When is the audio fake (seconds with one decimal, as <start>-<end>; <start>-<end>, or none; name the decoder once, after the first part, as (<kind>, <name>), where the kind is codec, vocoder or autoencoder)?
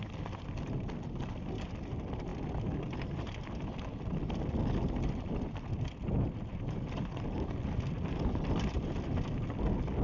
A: none